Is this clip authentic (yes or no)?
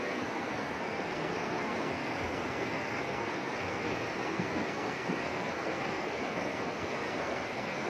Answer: no